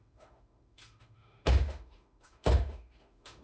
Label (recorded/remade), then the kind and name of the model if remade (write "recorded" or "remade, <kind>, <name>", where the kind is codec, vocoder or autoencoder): remade, autoencoder, DAC-VAE